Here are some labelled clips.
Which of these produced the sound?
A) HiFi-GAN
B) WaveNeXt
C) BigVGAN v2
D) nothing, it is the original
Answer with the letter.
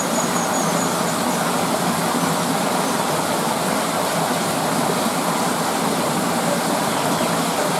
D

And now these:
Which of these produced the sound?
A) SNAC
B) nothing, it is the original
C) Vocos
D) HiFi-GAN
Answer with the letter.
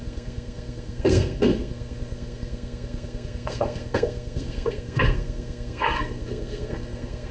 A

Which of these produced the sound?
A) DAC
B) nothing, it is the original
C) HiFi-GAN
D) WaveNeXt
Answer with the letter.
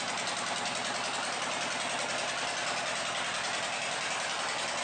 B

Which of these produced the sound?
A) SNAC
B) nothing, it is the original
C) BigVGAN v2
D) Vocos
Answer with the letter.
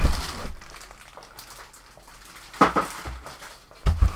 B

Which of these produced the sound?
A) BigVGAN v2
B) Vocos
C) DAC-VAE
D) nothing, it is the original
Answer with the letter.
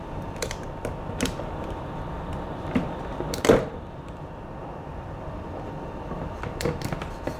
A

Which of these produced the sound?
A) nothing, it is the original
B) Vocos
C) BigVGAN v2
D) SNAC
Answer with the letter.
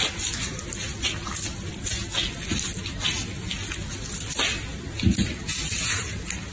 A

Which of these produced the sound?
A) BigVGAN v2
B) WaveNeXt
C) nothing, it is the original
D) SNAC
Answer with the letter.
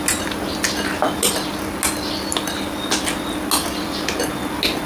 C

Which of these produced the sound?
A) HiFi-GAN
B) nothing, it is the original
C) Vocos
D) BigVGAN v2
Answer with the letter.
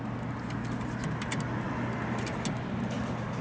B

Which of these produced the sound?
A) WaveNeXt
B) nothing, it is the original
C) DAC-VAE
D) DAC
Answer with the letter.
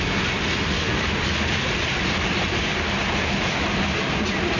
B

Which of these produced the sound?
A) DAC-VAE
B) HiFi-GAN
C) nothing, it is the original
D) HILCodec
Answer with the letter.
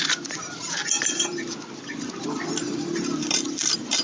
C